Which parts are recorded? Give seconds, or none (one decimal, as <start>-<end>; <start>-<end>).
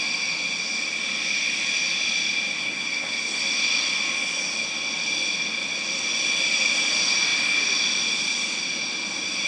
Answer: 0.0-2.6; 3.4-9.5